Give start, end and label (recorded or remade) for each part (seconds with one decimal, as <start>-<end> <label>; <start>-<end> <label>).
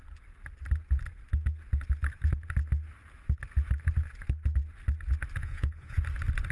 0.0-5.4 recorded; 5.4-6.0 remade; 6.0-6.5 recorded